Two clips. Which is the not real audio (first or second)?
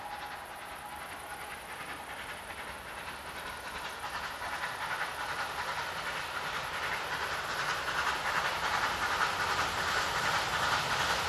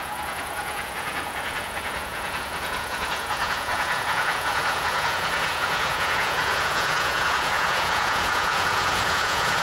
second